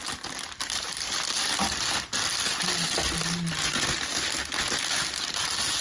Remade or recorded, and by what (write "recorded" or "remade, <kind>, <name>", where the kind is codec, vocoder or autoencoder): recorded